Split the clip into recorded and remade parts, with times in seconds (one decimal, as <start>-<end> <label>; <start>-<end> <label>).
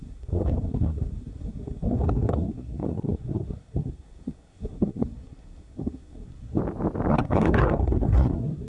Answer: 0.0-6.6 remade; 6.6-7.1 recorded; 7.1-8.7 remade